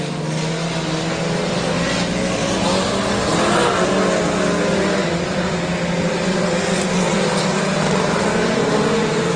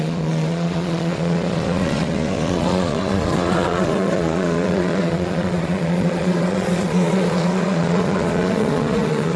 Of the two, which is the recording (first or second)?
first